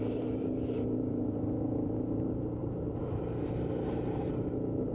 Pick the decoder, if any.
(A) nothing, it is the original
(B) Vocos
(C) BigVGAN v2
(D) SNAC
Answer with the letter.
C